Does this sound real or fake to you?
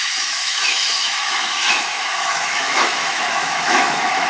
fake